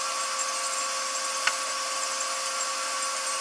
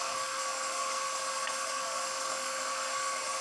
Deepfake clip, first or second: second